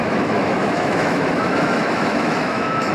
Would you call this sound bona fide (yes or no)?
no